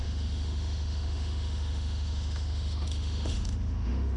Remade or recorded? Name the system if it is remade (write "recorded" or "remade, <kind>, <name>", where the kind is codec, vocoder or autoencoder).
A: remade, autoencoder, DAC-VAE